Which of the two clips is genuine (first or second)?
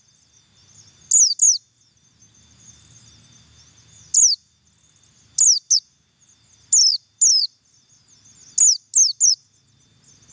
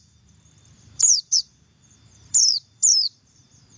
first